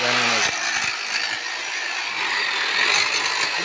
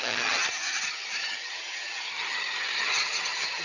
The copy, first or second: second